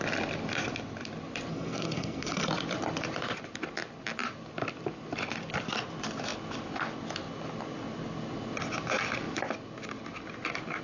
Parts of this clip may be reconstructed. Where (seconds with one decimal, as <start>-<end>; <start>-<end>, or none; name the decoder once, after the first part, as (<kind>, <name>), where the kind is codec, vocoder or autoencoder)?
1.5-2.5 (codec, SNAC)